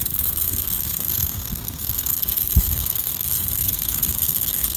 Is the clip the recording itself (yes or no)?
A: no